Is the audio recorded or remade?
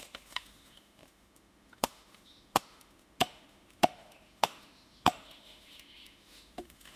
remade